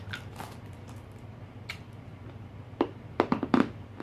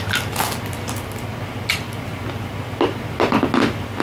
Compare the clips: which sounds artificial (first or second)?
first